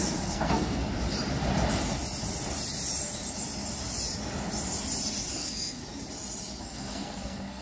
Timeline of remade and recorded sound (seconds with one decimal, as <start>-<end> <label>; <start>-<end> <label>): 0.0-0.8 remade; 0.8-5.3 recorded; 5.3-5.8 remade; 5.8-6.6 recorded; 6.6-7.6 remade